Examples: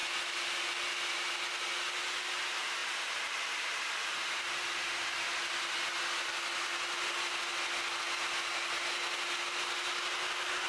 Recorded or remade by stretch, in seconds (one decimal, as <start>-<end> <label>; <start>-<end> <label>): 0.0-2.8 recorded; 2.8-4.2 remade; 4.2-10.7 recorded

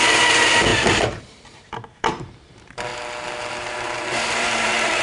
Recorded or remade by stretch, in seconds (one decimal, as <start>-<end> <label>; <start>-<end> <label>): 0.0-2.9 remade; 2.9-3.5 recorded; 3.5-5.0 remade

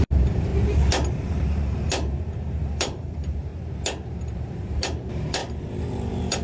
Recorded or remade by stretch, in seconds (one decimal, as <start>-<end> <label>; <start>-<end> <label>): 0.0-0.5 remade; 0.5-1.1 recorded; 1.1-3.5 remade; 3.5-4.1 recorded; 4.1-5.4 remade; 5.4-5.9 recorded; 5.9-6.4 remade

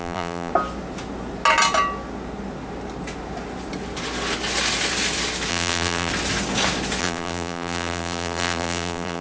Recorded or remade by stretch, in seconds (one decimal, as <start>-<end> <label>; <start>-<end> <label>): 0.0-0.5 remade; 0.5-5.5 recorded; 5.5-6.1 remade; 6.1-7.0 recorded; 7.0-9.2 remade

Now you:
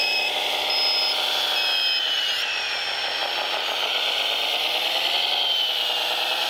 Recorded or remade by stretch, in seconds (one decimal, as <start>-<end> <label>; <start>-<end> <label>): 0.0-0.6 remade; 0.6-3.2 recorded; 3.2-3.9 remade; 3.9-6.5 recorded